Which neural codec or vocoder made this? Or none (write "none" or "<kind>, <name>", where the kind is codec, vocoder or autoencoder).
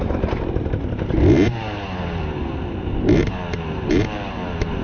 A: vocoder, BigVGAN v2